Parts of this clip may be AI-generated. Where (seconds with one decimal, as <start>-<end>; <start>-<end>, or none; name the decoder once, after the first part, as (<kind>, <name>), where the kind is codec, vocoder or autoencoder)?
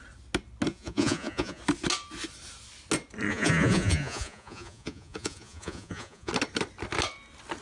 0.7-1.6 (vocoder, Vocos); 3.3-6.3